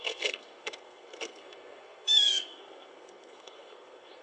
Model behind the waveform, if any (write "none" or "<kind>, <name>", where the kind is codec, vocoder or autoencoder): codec, SNAC